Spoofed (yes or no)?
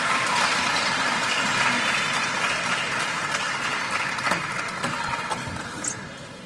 no